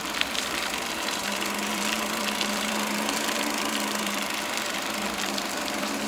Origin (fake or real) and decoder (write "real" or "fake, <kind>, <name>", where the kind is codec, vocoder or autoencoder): fake, vocoder, BigVGAN v2